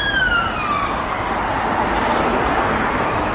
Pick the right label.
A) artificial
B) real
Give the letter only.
B